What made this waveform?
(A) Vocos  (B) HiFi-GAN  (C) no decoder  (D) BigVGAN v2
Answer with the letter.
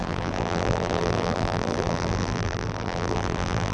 D